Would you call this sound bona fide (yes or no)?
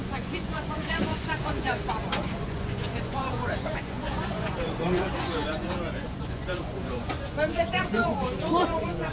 no